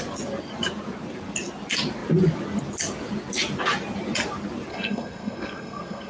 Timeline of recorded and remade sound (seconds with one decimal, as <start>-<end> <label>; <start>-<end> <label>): 0.0-4.7 recorded; 4.7-6.1 remade